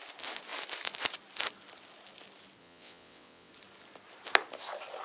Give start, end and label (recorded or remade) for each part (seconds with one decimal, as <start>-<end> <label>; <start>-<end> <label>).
0.0-2.6 recorded; 2.6-3.5 remade; 3.5-5.0 recorded